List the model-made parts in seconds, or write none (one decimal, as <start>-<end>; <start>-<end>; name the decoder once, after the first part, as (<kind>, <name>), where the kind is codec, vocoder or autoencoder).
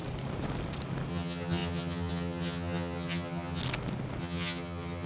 1.1-3.6 (vocoder, HiFi-GAN); 4.2-5.1